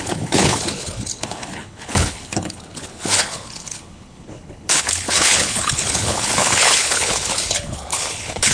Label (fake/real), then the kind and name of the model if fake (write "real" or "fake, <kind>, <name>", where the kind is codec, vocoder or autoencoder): fake, codec, HILCodec